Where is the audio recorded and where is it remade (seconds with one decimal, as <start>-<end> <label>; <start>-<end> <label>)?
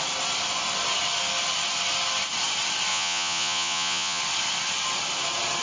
0.0-2.9 recorded; 2.9-4.2 remade; 4.2-5.6 recorded